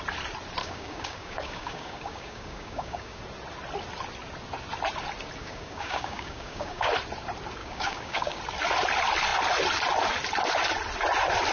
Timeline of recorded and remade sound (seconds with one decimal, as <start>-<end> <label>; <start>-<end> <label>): 0.0-0.6 recorded; 0.6-3.2 remade; 3.2-5.4 recorded; 5.4-6.9 remade; 6.9-7.6 recorded; 7.6-8.4 remade; 8.4-11.5 recorded